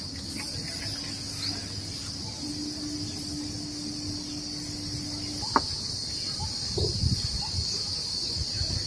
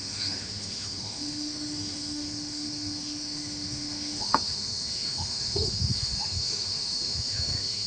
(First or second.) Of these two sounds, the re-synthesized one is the second